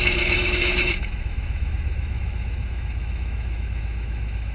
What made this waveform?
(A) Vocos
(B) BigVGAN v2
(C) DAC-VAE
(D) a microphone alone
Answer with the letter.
C